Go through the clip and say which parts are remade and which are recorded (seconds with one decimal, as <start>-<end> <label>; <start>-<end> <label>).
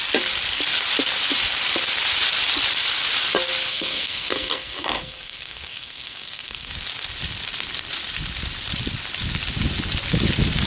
0.0-3.7 recorded; 3.7-6.7 remade; 6.7-10.7 recorded